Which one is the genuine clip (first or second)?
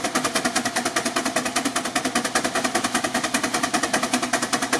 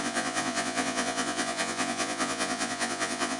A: first